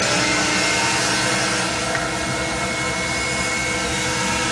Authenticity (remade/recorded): recorded